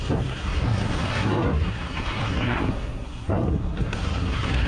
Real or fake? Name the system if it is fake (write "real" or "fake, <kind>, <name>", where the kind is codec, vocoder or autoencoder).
fake, codec, SNAC